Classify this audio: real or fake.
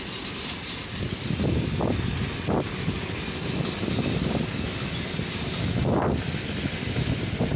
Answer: real